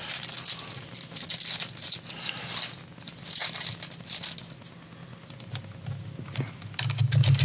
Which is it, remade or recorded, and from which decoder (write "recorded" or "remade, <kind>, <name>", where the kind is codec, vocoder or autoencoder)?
recorded